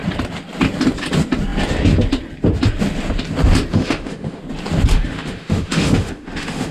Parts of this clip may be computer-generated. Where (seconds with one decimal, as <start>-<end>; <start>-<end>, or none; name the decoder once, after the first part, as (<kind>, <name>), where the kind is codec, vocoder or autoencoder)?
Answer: 3.7-4.4 (autoencoder, DAC-VAE); 4.9-6.7